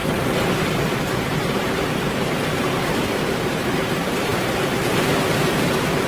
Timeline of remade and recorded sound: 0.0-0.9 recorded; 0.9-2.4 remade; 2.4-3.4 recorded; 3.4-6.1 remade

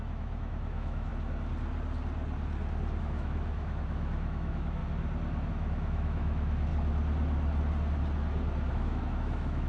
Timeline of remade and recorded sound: 0.0-1.1 remade; 1.1-3.0 recorded; 3.0-4.8 remade; 4.8-5.5 recorded; 5.5-6.7 remade; 6.7-8.7 recorded; 8.7-9.7 remade

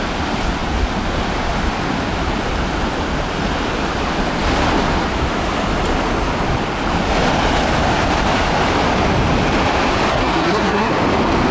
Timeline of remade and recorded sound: 0.0-10.1 recorded; 10.1-10.9 remade; 10.9-11.5 recorded

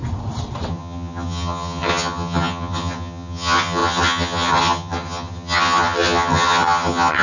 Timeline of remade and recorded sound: 0.0-0.7 recorded; 0.7-7.2 remade

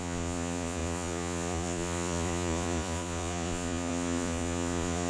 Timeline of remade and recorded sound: 0.0-5.1 remade